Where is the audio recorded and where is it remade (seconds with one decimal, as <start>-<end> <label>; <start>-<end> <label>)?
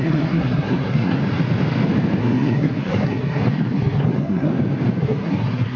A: 0.0-1.2 remade; 1.2-2.2 recorded; 2.2-4.5 remade; 4.5-5.0 recorded; 5.0-5.8 remade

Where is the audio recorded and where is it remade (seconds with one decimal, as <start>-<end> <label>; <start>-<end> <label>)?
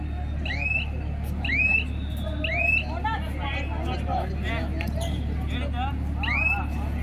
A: 0.0-7.0 recorded